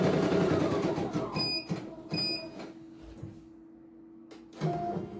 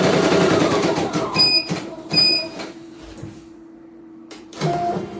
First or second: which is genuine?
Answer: first